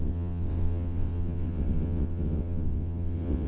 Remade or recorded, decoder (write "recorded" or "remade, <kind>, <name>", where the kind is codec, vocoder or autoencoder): remade, vocoder, WaveNeXt